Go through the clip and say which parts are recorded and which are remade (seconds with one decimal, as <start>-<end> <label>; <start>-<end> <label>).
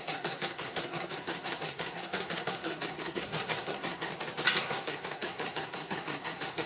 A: 0.0-4.1 remade; 4.1-4.6 recorded; 4.6-6.7 remade